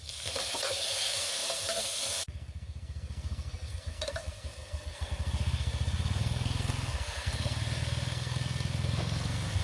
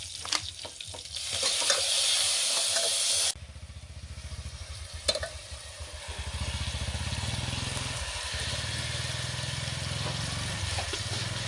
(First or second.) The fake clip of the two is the first